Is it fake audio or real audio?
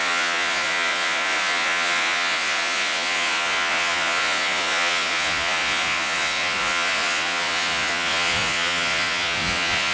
fake